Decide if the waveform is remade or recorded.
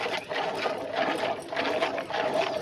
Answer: recorded